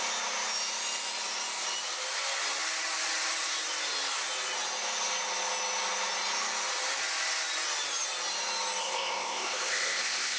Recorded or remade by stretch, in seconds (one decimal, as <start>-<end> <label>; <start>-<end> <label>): 0.0-8.8 recorded; 8.8-10.4 remade